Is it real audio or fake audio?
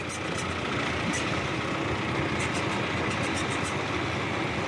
real